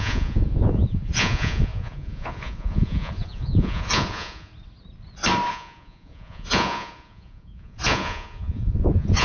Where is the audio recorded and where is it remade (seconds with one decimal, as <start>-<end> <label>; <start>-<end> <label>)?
0.0-4.5 remade; 4.5-5.5 recorded; 5.5-9.2 remade